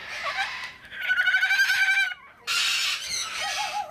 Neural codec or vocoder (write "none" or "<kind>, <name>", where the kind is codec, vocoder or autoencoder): none